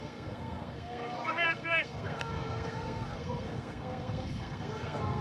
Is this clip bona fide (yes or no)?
no